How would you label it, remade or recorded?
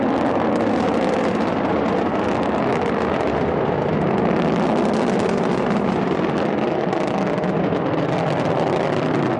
recorded